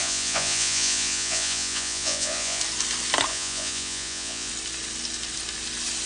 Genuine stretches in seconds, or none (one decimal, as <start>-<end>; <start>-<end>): 2.6-3.3; 4.5-6.1